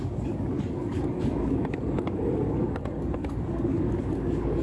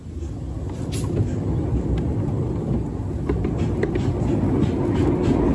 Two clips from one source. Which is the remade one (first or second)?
first